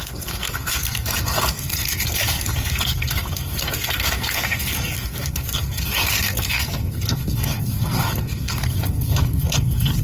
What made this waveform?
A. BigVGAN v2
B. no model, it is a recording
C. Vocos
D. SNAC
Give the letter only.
D